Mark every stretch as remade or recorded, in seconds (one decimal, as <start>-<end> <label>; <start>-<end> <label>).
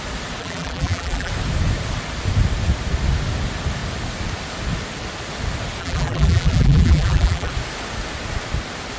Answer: 0.0-0.4 recorded; 0.4-1.3 remade; 1.3-5.8 recorded; 5.8-7.5 remade; 7.5-9.0 recorded